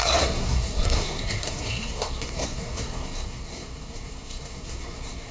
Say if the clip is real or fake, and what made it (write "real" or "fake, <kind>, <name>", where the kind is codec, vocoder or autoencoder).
fake, codec, SNAC